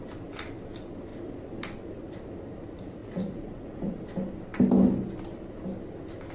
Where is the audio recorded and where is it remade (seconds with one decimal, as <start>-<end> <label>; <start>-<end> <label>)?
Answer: 0.0-3.0 recorded; 3.0-4.0 remade; 4.0-6.3 recorded